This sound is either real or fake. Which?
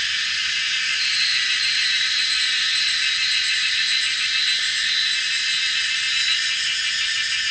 real